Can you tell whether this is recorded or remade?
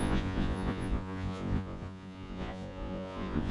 remade